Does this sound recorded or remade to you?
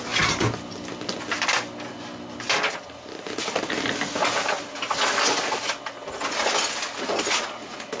recorded